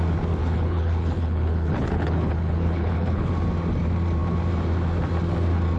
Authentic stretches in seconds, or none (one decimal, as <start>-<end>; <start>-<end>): 0.0-0.4; 3.3-5.8